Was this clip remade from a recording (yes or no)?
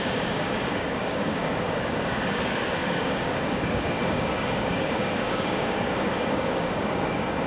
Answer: yes